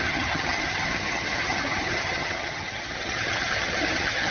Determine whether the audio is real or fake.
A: fake